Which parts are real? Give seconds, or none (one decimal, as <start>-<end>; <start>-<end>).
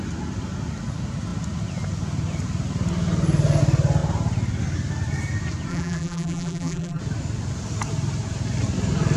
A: 0.0-5.7; 7.0-9.2